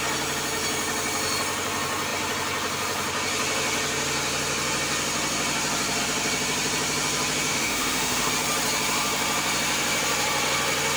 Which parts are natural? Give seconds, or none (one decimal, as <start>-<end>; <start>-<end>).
0.0-7.5; 8.3-11.0